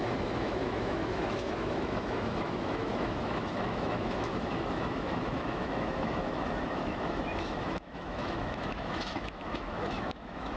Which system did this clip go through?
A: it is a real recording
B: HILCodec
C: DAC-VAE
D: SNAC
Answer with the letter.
C